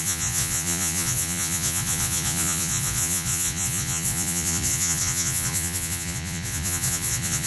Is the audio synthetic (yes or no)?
yes